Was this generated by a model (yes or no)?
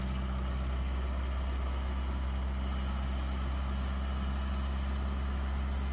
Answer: no